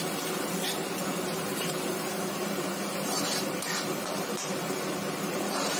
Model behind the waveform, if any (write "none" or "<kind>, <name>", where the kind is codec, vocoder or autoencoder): vocoder, BigVGAN v2